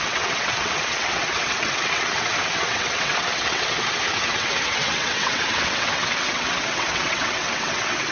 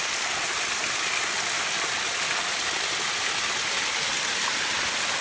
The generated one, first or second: first